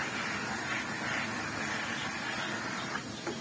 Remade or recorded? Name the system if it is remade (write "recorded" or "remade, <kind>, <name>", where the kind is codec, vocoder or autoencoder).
recorded